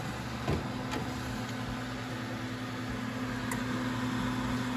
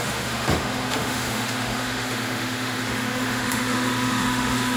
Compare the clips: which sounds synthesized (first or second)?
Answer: second